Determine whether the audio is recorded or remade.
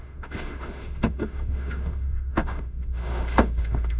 remade